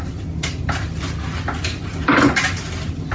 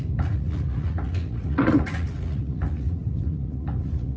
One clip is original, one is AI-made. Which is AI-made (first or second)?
second